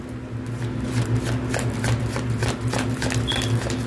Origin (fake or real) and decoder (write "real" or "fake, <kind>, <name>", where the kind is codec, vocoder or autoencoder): real